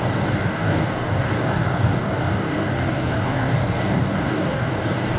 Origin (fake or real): fake